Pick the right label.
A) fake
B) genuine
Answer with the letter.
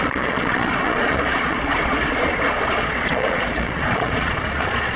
A